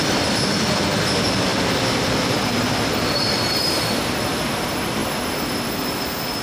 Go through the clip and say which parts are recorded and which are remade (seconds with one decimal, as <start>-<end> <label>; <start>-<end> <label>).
0.0-1.5 remade; 1.5-2.0 recorded; 2.0-5.0 remade; 5.0-6.0 recorded; 6.0-6.4 remade

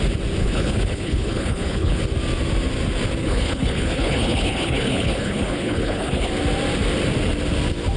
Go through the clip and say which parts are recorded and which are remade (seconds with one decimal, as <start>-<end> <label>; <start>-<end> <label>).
0.0-0.4 recorded; 0.4-2.0 remade; 2.0-3.2 recorded; 3.2-6.3 remade; 6.3-8.0 recorded

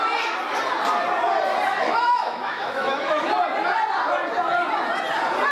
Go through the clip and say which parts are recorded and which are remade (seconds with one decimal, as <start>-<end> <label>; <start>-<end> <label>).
0.0-1.7 recorded; 1.7-3.2 remade; 3.2-5.5 recorded

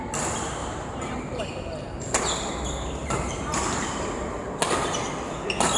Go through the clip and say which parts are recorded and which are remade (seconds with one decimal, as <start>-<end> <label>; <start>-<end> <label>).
0.0-0.6 recorded; 0.6-1.4 remade; 1.4-3.0 recorded; 3.0-4.3 remade; 4.3-5.8 recorded

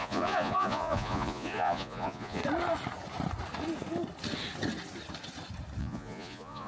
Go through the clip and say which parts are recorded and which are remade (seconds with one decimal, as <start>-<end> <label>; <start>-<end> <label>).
0.0-2.4 remade; 2.4-5.8 recorded; 5.8-6.7 remade

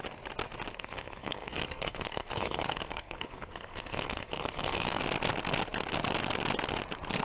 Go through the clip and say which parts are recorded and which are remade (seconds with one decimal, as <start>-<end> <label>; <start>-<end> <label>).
0.0-0.7 recorded; 0.7-5.0 remade; 5.0-7.2 recorded

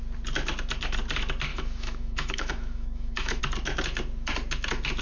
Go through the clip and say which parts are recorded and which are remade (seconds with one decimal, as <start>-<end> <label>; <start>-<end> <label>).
0.0-1.5 recorded; 1.5-3.4 remade; 3.4-5.0 recorded

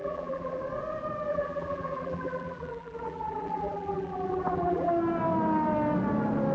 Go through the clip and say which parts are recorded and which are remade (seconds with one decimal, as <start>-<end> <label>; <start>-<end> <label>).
0.0-0.6 remade; 0.6-1.3 recorded; 1.3-4.9 remade; 4.9-6.5 recorded